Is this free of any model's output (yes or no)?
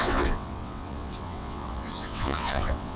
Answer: no